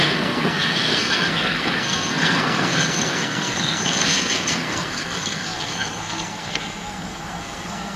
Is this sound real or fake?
fake